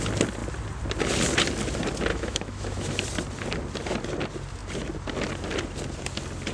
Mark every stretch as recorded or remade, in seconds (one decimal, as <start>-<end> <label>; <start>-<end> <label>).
0.0-2.1 recorded; 2.1-2.9 remade; 2.9-6.5 recorded